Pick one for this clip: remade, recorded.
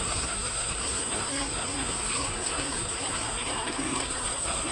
remade